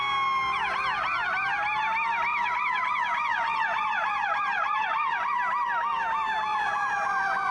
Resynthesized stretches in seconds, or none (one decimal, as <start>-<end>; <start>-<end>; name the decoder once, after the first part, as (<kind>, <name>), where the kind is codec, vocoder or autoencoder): 2.3-5.3 (vocoder, Vocos); 6.5-7.5